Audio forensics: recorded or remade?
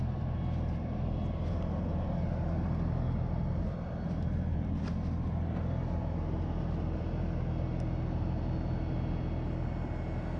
recorded